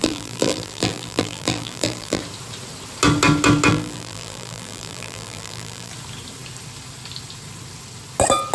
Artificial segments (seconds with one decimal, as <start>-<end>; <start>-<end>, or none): 0.0-2.2; 3.7-5.9